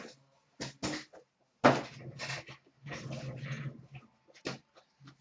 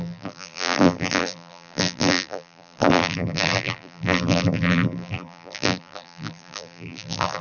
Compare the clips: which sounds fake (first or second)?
second